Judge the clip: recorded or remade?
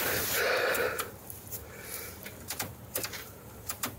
remade